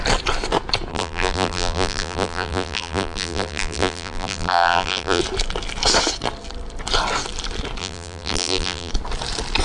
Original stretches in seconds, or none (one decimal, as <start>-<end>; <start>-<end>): 0.0-0.9; 5.2-7.8; 8.9-9.6